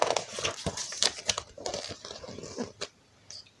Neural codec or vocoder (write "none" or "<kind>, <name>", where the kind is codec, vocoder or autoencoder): none